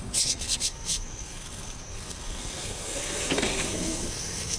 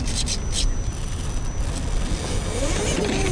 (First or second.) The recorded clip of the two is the second